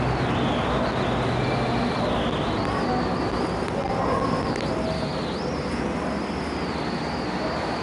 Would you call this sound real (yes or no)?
yes